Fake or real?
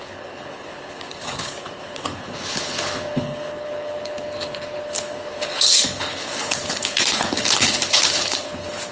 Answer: fake